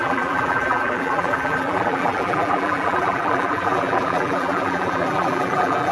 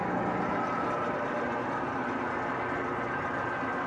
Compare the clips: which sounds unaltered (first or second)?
second